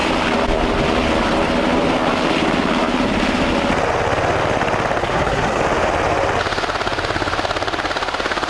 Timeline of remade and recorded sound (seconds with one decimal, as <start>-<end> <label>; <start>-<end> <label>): 0.0-5.0 recorded; 5.0-5.6 remade; 5.6-8.5 recorded